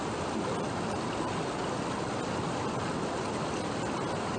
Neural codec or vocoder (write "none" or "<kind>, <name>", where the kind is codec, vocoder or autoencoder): none